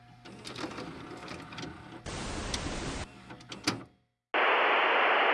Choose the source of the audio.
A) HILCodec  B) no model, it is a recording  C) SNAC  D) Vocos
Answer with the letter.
B